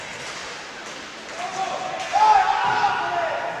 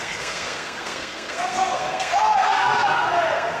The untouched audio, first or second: first